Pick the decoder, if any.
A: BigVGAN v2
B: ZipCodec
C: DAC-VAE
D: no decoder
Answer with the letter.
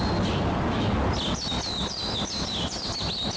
D